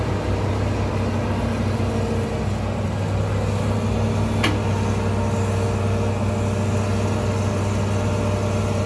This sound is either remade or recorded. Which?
recorded